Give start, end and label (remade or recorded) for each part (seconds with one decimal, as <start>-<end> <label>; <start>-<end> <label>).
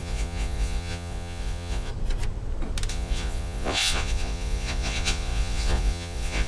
0.0-1.9 remade; 1.9-2.9 recorded; 2.9-6.5 remade